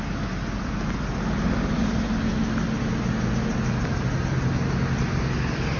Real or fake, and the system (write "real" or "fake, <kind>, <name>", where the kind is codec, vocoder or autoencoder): real